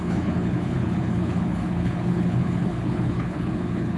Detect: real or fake fake